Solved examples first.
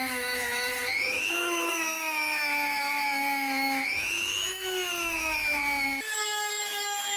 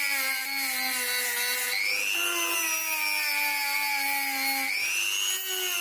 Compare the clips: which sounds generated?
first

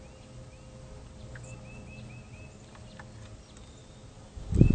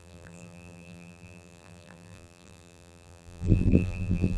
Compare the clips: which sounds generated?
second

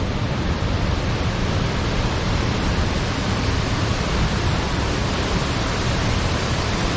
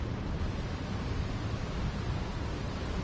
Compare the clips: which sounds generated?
first